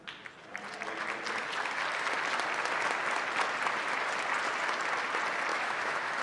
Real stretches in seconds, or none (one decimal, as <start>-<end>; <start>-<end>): 0.0-5.5